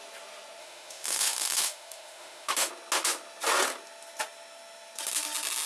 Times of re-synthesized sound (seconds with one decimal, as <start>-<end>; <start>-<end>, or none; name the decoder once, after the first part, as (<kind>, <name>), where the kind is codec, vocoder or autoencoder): 0.6-2.7 (autoencoder, DAC-VAE)